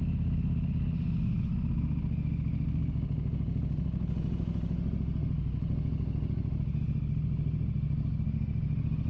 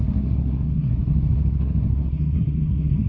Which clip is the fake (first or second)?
second